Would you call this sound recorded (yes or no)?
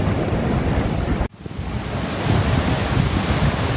yes